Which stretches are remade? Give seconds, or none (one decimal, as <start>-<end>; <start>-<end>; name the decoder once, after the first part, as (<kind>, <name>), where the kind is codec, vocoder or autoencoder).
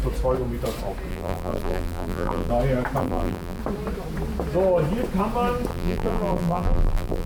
1.1-2.5 (vocoder, BigVGAN v2); 3.0-3.6; 5.7-7.3